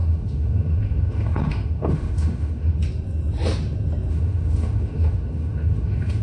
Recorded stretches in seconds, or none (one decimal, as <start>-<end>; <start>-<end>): 2.8-4.1